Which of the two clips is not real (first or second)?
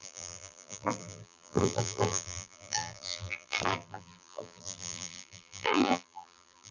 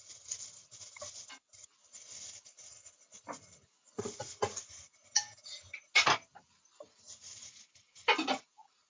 first